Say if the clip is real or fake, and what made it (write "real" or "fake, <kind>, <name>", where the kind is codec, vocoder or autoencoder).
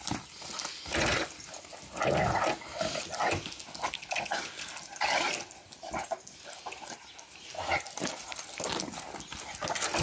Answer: real